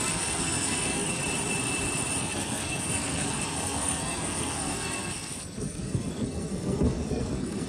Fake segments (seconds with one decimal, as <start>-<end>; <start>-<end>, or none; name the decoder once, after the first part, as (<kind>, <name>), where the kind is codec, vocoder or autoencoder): 0.0-1.2 (codec, SNAC); 2.2-7.7